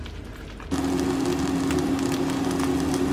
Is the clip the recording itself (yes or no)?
yes